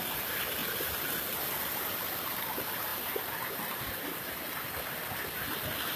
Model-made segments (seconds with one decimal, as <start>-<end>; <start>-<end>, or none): 2.9-5.1